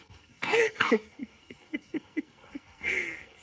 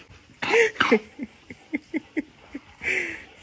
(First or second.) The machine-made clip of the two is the first